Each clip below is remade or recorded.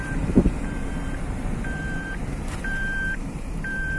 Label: remade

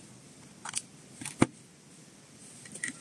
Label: recorded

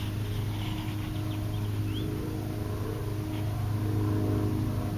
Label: recorded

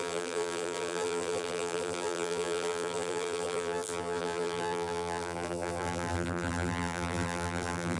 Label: remade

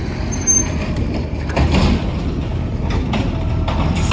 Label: remade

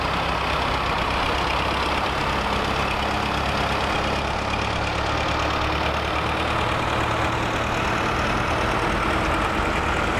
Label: recorded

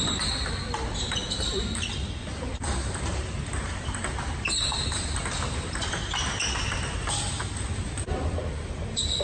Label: recorded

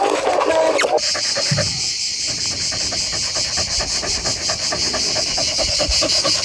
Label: recorded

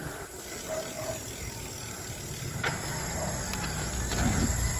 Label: recorded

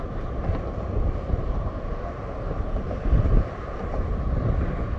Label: remade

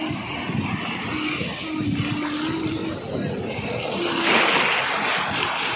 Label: recorded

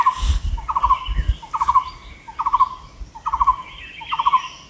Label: recorded